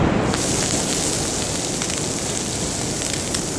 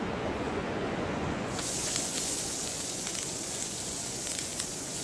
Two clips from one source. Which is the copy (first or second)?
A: second